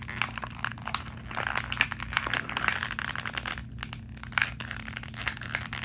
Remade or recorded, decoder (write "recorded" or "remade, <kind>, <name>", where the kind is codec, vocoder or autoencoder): recorded